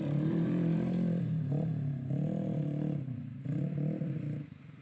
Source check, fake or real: fake